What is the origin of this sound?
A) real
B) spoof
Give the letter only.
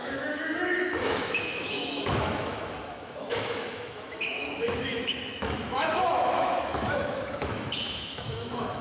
B